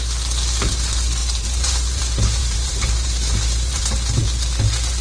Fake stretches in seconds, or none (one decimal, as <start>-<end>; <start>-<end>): 1.2-2.0; 2.4-3.8